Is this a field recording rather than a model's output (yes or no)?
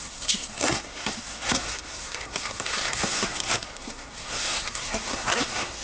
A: no